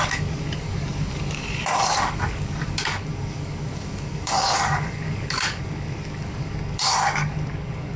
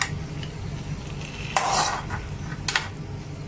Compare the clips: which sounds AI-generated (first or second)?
first